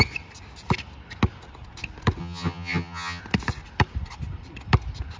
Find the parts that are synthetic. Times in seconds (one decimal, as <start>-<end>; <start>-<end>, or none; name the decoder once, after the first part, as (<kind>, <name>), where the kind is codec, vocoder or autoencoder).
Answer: 2.2-3.2 (vocoder, HiFi-GAN)